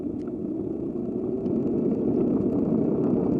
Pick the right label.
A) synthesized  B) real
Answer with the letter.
B